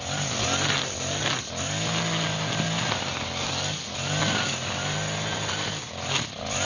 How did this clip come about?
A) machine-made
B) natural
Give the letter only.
B